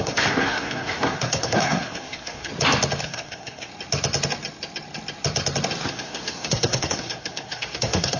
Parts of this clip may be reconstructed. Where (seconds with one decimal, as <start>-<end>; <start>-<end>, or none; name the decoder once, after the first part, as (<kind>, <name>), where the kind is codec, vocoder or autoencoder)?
0.0-2.5 (codec, SNAC); 3.0-3.7; 5.9-8.2